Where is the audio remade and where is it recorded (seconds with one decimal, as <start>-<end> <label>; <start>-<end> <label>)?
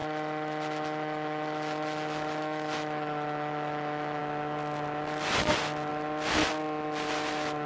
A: 0.0-4.2 remade; 4.2-7.7 recorded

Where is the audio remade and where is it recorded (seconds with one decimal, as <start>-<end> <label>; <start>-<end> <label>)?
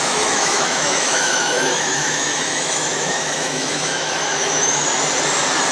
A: 0.0-4.8 remade; 4.8-5.7 recorded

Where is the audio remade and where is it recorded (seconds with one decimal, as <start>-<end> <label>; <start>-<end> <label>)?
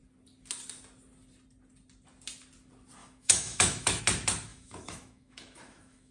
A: 0.0-3.0 recorded; 3.0-4.0 remade; 4.0-4.5 recorded; 4.5-6.1 remade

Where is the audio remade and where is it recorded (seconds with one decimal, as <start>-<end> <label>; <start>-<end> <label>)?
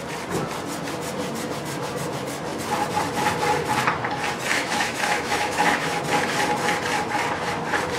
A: 0.0-4.5 recorded; 4.5-6.0 remade; 6.0-8.0 recorded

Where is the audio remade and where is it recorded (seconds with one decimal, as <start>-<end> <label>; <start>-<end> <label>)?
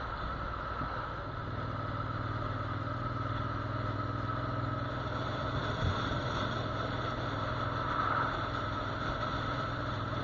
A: 0.0-10.2 recorded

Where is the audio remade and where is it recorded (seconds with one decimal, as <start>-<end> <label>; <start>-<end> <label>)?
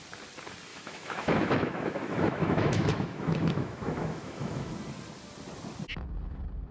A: 0.0-0.7 recorded; 0.7-4.7 remade; 4.7-6.7 recorded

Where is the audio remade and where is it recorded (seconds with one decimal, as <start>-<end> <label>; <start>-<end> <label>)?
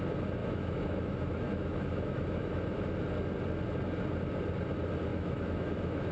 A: 0.0-0.4 recorded; 0.4-2.9 remade; 2.9-5.1 recorded; 5.1-6.1 remade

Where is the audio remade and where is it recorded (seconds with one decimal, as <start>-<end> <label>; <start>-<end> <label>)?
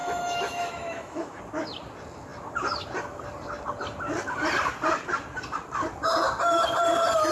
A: 0.0-1.4 remade; 1.4-7.3 recorded